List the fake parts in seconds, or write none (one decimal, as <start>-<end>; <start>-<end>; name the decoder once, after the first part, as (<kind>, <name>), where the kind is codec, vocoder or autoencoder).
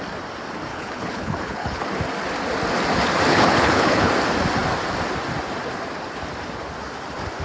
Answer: 0.7-1.8 (codec, HILCodec); 3.3-4.1